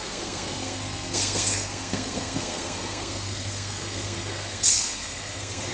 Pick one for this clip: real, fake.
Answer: fake